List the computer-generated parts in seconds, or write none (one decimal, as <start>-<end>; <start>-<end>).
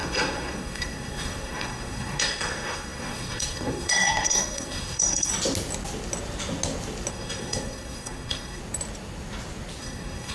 0.0-5.3; 7.1-8.6; 9.8-10.3